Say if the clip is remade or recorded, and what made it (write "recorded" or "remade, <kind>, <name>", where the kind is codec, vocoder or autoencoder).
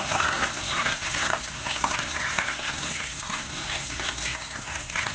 remade, codec, SNAC